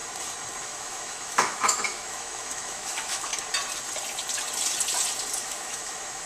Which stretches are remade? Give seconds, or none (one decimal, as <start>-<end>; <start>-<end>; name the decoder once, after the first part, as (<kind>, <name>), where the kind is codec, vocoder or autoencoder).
0.6-3.3 (autoencoder, DAC-VAE); 5.4-6.3